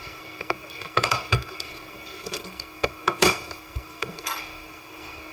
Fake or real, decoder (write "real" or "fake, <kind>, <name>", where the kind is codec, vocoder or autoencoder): fake, codec, SNAC